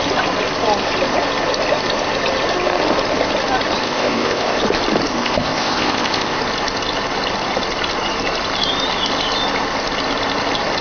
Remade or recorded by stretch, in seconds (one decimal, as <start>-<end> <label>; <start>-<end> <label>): 0.0-3.8 recorded; 3.8-4.6 remade; 4.6-5.1 recorded; 5.1-6.4 remade; 6.4-10.8 recorded